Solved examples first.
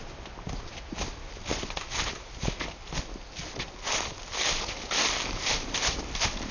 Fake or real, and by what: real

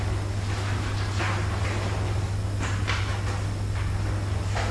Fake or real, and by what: real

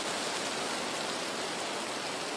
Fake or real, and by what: real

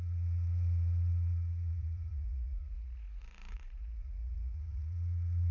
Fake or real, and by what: fake, vocoder, Vocos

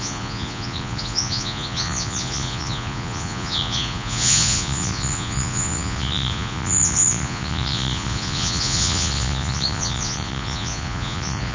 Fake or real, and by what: fake, vocoder, Vocos